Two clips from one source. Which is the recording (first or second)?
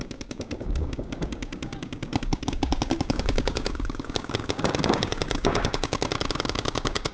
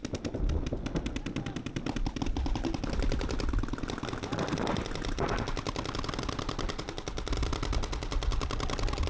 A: second